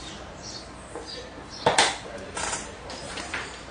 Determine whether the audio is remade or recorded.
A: remade